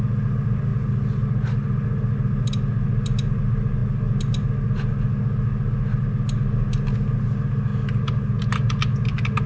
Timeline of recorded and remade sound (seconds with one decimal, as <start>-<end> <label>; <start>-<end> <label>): 0.0-9.5 recorded